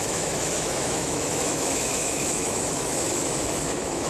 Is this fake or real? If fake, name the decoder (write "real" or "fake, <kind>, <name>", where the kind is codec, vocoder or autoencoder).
fake, autoencoder, DAC-VAE